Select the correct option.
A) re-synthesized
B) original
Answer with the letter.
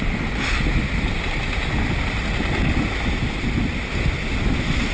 B